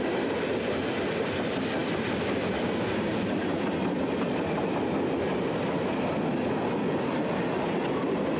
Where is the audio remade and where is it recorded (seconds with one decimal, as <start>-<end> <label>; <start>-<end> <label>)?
0.0-8.4 recorded